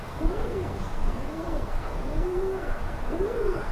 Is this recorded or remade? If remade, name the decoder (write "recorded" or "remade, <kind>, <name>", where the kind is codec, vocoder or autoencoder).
remade, codec, SNAC